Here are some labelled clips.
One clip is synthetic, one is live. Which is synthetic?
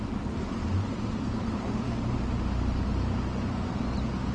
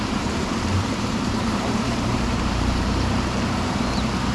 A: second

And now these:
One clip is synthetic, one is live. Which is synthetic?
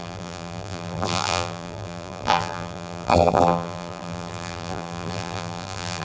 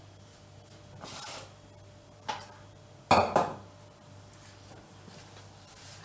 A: first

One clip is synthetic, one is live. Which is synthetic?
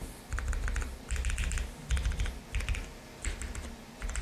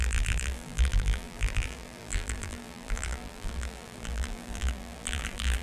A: second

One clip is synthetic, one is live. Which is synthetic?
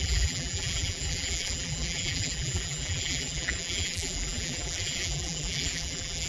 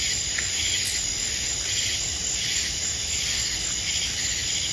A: first